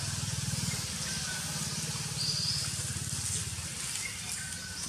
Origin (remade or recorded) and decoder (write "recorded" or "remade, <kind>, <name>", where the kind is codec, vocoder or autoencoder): recorded